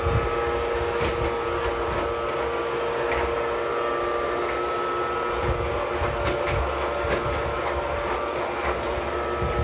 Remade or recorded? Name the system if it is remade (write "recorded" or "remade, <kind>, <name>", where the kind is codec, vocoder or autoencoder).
recorded